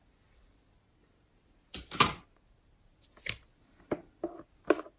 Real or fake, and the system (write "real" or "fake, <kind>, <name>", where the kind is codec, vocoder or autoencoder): real